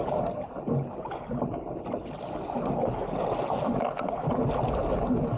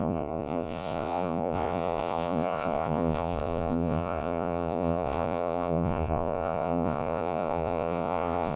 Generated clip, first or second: second